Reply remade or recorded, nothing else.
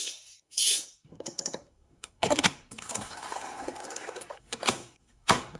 remade